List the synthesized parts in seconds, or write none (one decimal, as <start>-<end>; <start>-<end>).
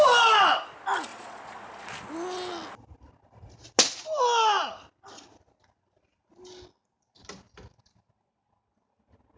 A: 1.1-1.9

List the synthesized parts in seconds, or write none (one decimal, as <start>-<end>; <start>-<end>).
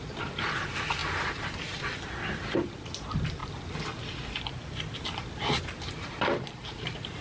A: 0.0-1.0; 2.3-3.4; 5.6-7.2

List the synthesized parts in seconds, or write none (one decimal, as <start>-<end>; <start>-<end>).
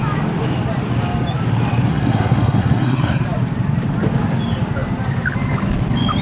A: 1.9-3.2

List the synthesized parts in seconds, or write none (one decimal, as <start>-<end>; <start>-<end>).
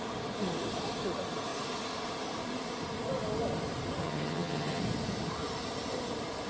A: 4.0-4.8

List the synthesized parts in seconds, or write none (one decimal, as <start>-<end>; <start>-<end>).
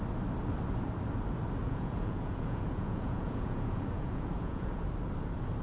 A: 1.6-4.8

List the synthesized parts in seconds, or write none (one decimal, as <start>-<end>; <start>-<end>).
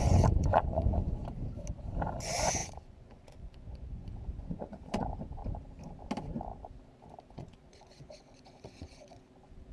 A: 0.0-1.2; 2.2-5.4; 7.3-9.7